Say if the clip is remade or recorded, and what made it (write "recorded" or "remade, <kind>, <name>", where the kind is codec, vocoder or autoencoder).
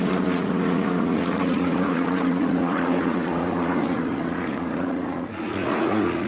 remade, vocoder, Vocos